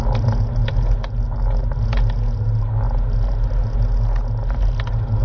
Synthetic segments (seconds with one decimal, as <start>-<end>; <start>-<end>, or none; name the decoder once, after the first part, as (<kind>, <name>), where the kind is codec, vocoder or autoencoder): none